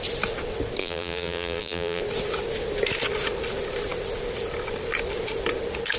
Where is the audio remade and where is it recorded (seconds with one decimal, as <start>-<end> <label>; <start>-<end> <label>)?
0.0-0.8 recorded; 0.8-2.0 remade; 2.0-6.0 recorded